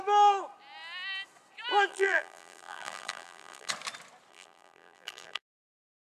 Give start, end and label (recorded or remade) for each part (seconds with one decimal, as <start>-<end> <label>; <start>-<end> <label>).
0.0-1.9 recorded; 1.9-3.7 remade; 3.7-4.3 recorded; 4.3-5.4 remade; 5.4-6.1 recorded